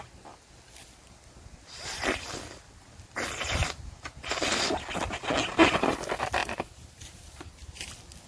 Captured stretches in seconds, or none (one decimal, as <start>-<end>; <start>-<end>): 0.0-6.4; 7.9-8.3